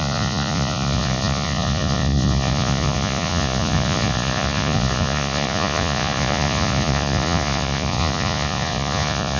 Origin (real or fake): fake